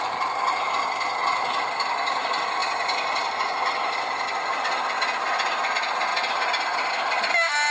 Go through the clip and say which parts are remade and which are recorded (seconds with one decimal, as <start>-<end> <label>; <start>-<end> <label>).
0.0-7.7 recorded